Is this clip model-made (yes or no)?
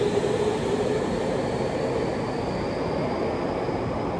no